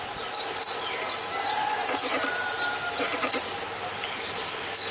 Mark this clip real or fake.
real